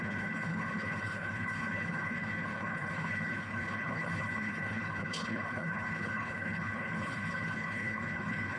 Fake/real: fake